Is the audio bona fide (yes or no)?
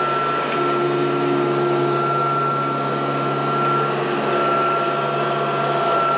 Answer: yes